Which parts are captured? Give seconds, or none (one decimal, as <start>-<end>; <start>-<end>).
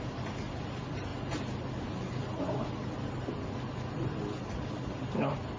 0.0-5.6